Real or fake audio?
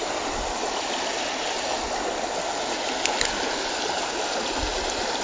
real